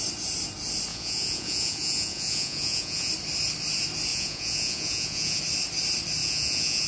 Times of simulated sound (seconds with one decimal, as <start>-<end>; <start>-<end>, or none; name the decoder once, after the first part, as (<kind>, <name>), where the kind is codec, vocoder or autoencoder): 0.9-3.1 (vocoder, Vocos); 4.1-5.4; 6.2-6.9